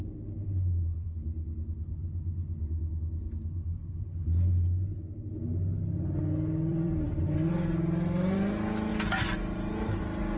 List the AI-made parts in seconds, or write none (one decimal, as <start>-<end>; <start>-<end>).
6.7-7.2